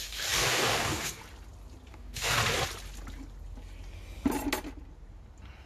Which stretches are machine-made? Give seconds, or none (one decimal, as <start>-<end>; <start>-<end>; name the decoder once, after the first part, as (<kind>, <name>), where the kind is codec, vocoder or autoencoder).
0.0-1.2 (codec, DAC); 1.9-2.4

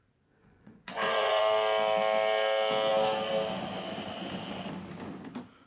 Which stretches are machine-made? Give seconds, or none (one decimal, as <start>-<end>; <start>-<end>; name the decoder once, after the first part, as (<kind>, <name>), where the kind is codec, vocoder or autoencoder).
0.4-1.4 (vocoder, Vocos)

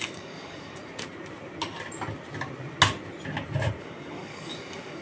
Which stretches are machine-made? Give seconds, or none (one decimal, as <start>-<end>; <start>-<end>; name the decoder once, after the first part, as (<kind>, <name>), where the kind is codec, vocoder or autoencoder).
0.0-0.8 (codec, DAC); 3.8-5.0

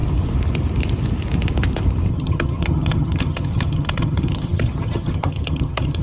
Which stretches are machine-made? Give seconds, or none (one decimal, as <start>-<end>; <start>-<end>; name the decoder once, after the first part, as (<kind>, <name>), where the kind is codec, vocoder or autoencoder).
2.1-6.0 (vocoder, HiFi-GAN)

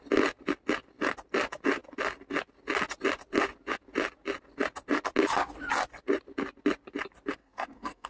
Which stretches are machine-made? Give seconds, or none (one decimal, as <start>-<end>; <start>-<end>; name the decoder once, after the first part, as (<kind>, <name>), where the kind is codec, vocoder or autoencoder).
7.4-8.1 (codec, SNAC)

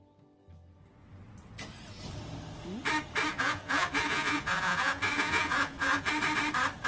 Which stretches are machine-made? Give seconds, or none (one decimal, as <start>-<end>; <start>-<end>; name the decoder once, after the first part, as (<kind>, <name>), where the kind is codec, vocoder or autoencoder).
3.3-6.1 (vocoder, Vocos)

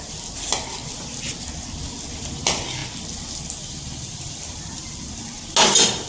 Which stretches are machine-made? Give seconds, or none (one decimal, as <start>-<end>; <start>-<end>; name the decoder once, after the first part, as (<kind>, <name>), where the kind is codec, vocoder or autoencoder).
none

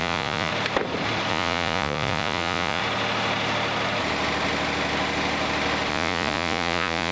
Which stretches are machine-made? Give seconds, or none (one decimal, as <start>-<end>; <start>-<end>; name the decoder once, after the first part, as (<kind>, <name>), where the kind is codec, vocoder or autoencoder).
0.0-0.5 (vocoder, Vocos); 1.3-2.8; 5.9-7.1